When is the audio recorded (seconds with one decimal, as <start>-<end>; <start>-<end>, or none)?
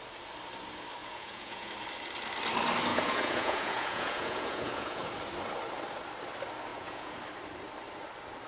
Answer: 0.0-1.0; 1.7-2.9; 5.1-6.7; 7.2-8.5